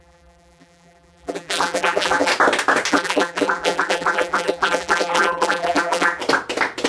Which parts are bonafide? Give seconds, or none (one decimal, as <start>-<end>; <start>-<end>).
2.3-2.9; 6.2-6.9